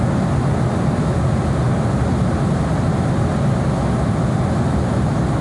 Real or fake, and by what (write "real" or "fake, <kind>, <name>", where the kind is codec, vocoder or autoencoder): real